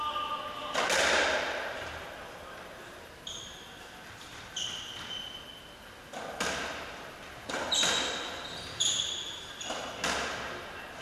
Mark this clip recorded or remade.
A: recorded